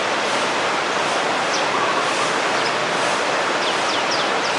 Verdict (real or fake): real